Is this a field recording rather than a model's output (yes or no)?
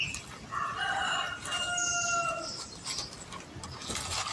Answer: yes